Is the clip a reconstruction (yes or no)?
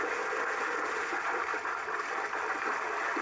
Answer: no